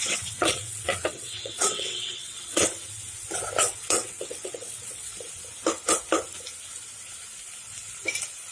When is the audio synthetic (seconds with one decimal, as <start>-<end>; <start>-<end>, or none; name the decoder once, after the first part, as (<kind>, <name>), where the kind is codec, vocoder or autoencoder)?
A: 0.0-2.7 (vocoder, WaveNeXt); 3.6-5.1